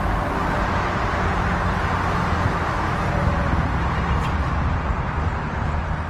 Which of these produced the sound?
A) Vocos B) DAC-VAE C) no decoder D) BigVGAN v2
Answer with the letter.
D